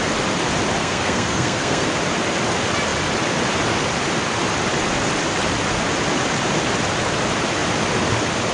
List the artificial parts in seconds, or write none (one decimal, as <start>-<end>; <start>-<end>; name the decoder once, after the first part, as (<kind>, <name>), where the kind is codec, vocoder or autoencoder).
0.8-1.9 (codec, SNAC)